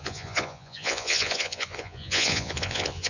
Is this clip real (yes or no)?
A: no